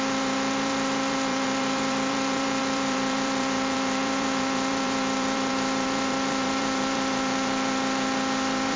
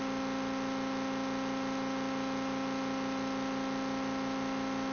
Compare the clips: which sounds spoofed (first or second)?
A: first